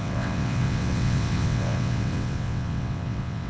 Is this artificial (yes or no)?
yes